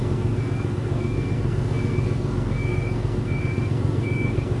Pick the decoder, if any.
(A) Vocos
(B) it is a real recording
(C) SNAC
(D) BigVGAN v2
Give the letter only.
C